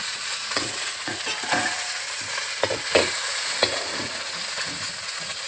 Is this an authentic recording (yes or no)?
no